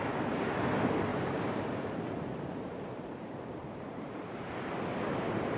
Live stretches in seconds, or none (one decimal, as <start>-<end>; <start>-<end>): 0.0-1.1; 4.5-5.6